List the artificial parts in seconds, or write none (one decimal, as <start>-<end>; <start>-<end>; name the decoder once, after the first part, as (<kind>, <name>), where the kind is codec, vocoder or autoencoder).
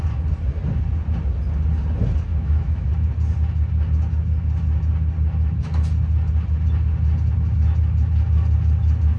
2.3-2.9 (autoencoder, DAC-VAE)